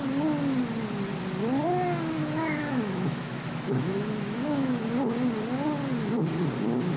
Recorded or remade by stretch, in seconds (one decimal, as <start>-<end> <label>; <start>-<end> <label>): 0.0-2.2 recorded; 2.2-4.8 remade; 4.8-7.0 recorded